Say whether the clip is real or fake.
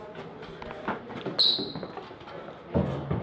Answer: real